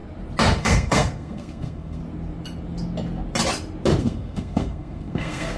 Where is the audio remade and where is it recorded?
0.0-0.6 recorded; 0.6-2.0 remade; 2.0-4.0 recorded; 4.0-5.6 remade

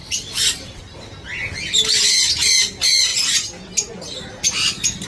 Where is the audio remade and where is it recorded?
0.0-0.8 remade; 0.8-5.1 recorded